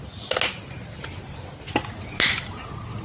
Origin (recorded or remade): recorded